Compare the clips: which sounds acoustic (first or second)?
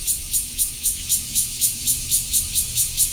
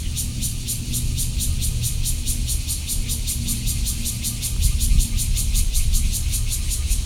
second